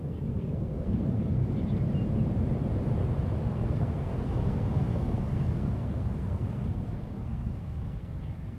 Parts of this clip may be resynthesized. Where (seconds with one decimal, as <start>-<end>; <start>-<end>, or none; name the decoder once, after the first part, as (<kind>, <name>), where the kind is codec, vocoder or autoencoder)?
0.0-1.4 (codec, SNAC); 3.4-8.6